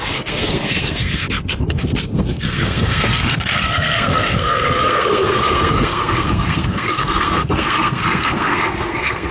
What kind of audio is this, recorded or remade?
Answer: remade